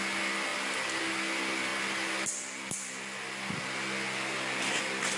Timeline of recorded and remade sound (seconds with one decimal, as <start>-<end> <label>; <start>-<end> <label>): 0.0-5.2 recorded